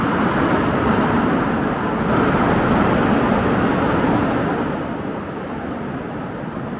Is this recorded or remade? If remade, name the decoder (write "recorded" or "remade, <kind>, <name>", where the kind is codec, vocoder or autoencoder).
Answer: recorded